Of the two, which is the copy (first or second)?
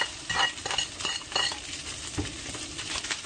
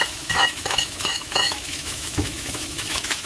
second